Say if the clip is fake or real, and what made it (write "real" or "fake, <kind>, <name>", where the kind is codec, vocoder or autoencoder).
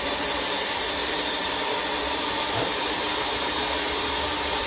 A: fake, vocoder, BigVGAN v2